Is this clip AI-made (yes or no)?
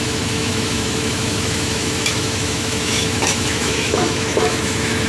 yes